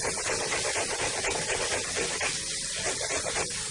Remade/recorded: recorded